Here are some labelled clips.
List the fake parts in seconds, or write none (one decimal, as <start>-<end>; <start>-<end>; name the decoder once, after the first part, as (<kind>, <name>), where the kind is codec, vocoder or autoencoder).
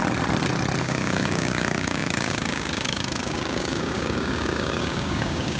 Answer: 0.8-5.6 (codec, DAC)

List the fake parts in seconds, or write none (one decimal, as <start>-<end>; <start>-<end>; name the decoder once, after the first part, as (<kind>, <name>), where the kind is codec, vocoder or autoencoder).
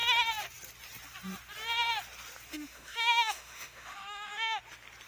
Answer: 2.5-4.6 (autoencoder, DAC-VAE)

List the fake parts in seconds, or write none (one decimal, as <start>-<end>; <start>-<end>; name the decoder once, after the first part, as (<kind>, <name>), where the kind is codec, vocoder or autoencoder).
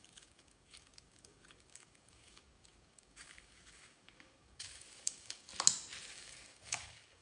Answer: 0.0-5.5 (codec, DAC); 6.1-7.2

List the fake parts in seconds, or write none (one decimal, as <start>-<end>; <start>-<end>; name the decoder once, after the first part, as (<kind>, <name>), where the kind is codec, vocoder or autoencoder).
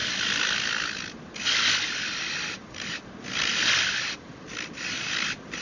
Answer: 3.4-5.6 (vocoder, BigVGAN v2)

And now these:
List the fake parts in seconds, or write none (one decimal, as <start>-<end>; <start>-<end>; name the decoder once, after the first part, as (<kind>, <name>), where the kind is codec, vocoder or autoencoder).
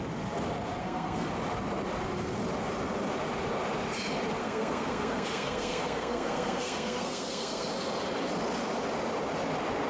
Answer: 0.8-1.3 (codec, SNAC); 4.4-7.7